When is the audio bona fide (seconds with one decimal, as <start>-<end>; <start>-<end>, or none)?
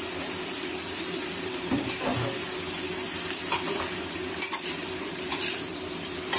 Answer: 2.1-3.5